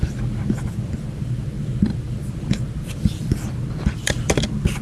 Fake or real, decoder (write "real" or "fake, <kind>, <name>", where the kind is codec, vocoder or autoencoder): fake, vocoder, BigVGAN v2